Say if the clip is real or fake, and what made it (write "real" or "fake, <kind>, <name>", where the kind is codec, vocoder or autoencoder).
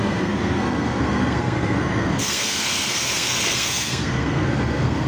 fake, codec, SNAC